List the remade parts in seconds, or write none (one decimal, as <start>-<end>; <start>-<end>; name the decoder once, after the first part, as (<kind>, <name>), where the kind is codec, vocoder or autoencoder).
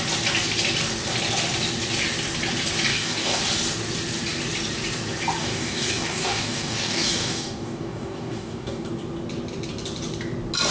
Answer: 2.9-3.4 (codec, DAC); 5.4-8.9